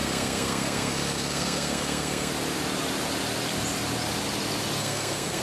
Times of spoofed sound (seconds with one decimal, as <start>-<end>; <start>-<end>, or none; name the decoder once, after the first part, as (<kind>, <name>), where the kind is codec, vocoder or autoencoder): 0.0-2.3 (codec, SNAC); 4.8-5.4